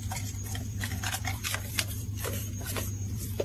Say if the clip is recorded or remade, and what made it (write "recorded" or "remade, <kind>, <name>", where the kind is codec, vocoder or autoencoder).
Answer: remade, vocoder, BigVGAN v2